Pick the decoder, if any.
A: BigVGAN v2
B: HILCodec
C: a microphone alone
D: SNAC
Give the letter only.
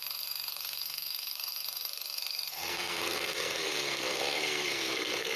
D